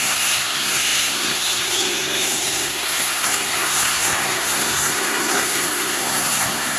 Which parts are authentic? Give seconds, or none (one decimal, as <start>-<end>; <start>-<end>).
none